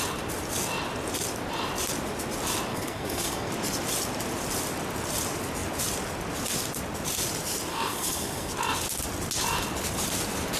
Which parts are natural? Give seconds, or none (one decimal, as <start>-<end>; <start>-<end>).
0.0-2.7; 3.5-7.7; 8.5-10.6